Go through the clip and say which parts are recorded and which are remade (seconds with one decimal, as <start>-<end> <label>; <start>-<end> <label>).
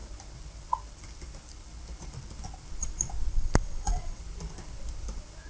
0.0-3.3 recorded; 3.3-4.2 remade; 4.2-5.5 recorded